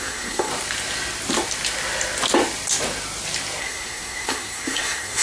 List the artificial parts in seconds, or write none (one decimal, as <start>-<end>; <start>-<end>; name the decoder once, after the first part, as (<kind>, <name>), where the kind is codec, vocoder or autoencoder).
0.0-0.5 (codec, SNAC); 3.6-5.2